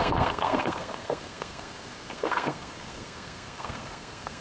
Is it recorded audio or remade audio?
remade